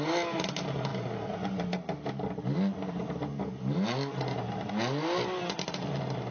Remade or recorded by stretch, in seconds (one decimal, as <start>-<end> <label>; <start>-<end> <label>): 0.0-6.3 recorded